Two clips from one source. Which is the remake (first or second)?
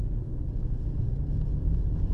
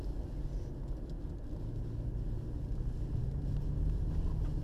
first